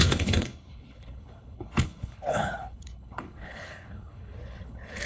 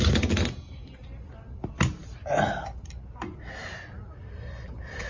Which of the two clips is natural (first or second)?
second